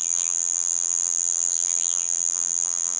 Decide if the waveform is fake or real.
fake